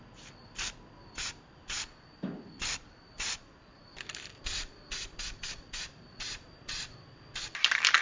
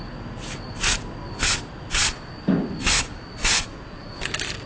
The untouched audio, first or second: second